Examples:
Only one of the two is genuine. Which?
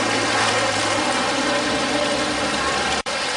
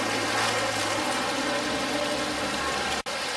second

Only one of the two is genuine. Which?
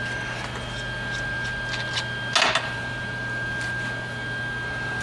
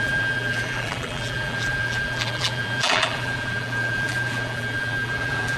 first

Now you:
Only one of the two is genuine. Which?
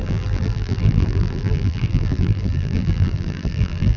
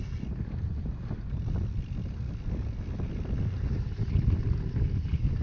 second